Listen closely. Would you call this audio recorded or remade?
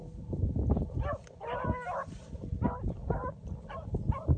recorded